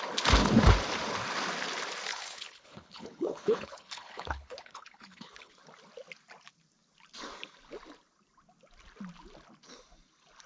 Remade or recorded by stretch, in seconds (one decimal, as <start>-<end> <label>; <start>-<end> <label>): 0.0-2.1 recorded; 2.1-5.5 remade; 5.5-10.5 recorded